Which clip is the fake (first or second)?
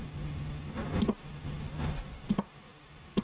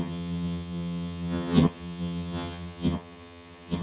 second